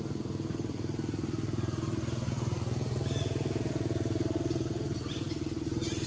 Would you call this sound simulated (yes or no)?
no